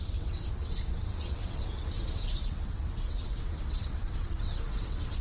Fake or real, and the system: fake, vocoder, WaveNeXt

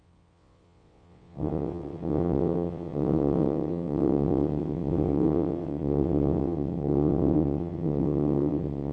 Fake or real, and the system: fake, vocoder, WaveNeXt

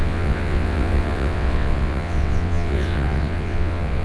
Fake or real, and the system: fake, vocoder, WaveNeXt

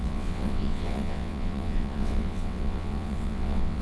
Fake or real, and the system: fake, vocoder, WaveNeXt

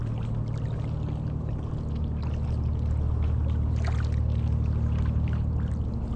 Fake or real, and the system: real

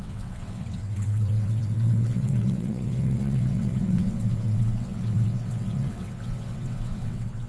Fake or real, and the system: fake, vocoder, WaveNeXt